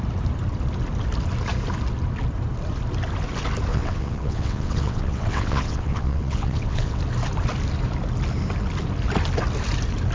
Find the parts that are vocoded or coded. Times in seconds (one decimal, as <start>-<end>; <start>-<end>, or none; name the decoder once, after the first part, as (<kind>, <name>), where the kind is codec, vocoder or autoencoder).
3.7-7.0 (vocoder, WaveNeXt)